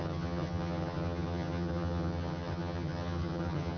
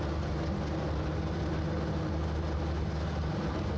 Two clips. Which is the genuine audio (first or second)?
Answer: second